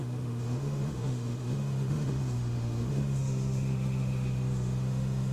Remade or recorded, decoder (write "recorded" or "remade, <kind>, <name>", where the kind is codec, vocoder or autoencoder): remade, autoencoder, DAC-VAE